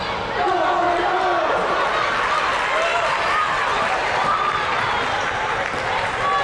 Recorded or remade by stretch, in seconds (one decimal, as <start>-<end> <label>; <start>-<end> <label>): 0.0-6.4 recorded